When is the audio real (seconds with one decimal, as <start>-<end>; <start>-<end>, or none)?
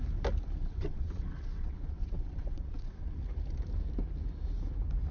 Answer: 0.0-0.6; 3.2-5.1